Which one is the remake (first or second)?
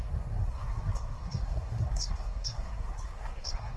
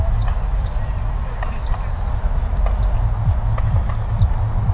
first